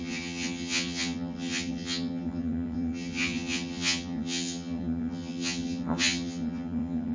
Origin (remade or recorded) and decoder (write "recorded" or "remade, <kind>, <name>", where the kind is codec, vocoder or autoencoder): remade, vocoder, HiFi-GAN